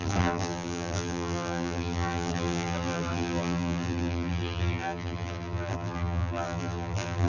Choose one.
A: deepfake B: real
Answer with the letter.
A